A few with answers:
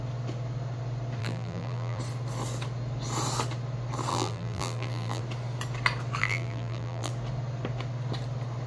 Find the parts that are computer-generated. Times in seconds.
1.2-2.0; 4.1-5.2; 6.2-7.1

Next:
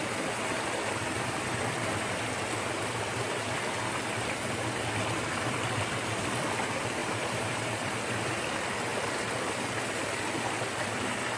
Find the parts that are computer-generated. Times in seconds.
7.0-7.9

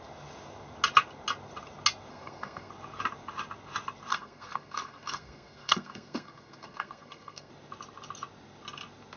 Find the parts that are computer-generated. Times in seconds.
2.1-2.7; 4.1-7.5

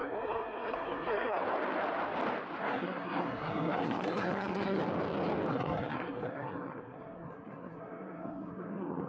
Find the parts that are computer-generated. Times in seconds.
0.0-1.4; 2.6-4.8; 5.5-9.1

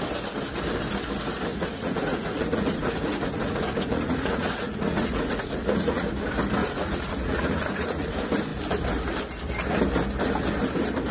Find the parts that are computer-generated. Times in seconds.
1.5-6.1; 6.6-8.1

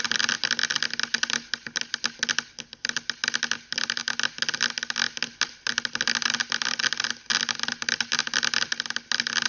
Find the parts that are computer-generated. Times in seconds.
none

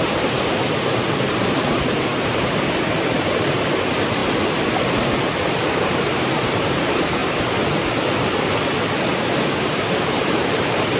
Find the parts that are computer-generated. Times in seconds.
0.0-4.2; 5.8-7.2; 9.6-11.0

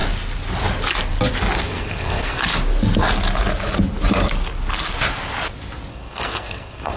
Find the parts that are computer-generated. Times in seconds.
1.7-2.4; 5.9-7.0